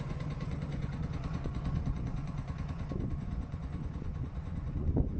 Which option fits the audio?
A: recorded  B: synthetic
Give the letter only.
B